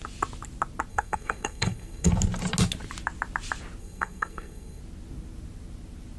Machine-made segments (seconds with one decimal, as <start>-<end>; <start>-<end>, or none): 0.9-2.1; 3.8-4.8